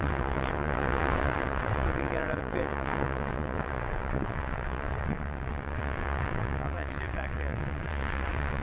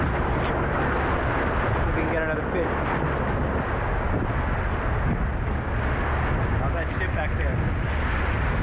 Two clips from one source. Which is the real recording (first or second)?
second